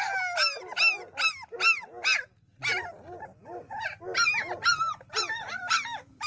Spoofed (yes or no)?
no